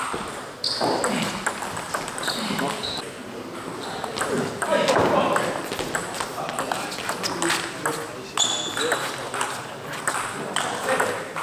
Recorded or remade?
recorded